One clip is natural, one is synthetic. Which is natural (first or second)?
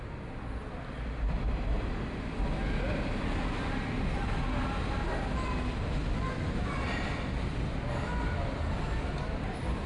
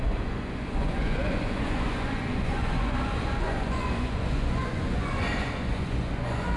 first